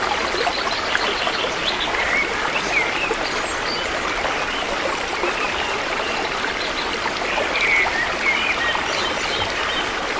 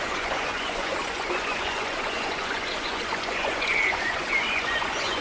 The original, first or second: first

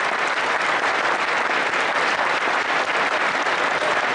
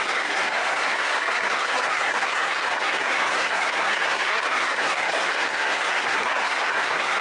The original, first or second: first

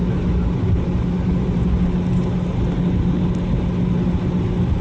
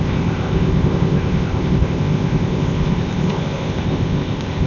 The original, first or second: first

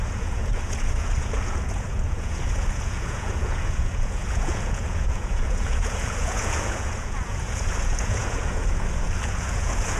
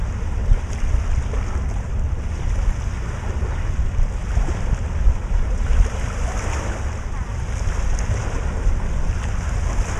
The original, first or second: second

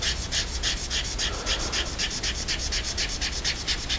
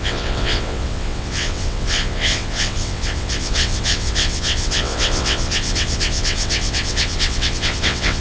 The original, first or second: first